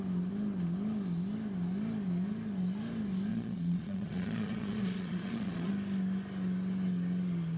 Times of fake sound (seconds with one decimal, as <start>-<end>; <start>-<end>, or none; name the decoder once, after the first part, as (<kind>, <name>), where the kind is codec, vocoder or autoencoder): 3.3-5.7 (vocoder, Vocos)